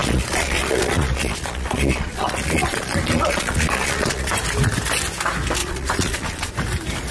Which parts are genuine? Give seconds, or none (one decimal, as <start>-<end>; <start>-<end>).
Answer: 4.3-5.6; 6.5-7.1